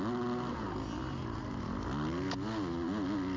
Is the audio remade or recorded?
recorded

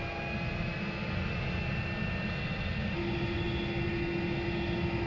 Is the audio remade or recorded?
recorded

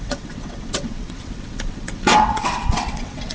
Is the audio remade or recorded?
remade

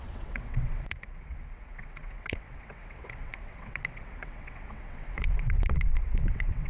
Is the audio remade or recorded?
remade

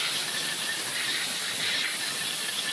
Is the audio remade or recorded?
recorded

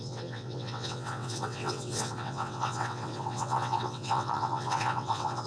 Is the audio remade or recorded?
remade